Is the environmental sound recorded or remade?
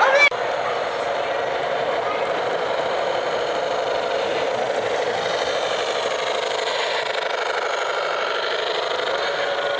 recorded